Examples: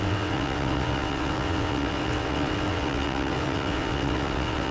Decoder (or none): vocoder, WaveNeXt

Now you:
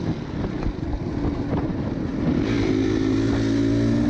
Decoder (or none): none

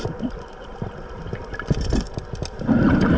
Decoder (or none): none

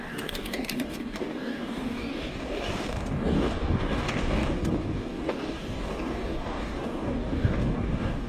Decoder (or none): codec, DAC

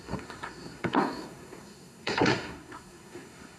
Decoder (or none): codec, SNAC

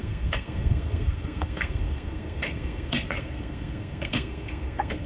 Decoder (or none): codec, SNAC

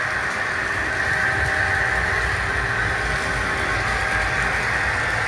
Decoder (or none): none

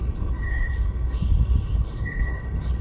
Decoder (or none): codec, HILCodec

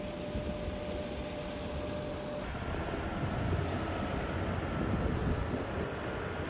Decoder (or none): none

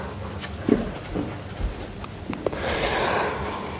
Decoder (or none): none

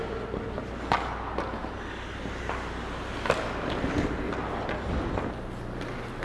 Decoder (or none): none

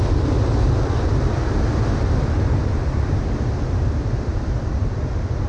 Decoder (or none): none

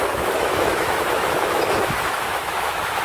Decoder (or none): autoencoder, DAC-VAE